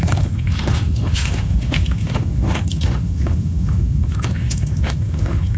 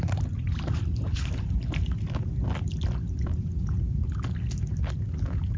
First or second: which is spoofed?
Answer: first